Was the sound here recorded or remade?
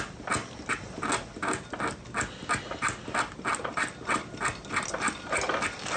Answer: recorded